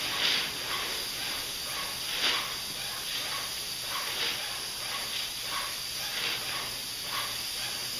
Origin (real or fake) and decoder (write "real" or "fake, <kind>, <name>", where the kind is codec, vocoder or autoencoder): real